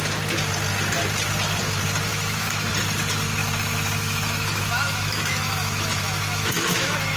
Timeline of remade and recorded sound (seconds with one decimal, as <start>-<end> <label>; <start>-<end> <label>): 0.0-2.1 recorded; 2.1-2.7 remade; 2.7-3.4 recorded; 3.4-7.2 remade